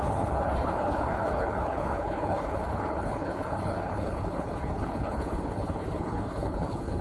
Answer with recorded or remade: remade